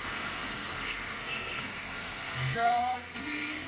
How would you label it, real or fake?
fake